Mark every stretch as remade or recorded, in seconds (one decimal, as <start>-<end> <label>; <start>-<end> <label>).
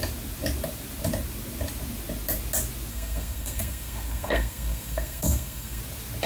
0.0-2.9 recorded; 2.9-5.8 remade; 5.8-6.3 recorded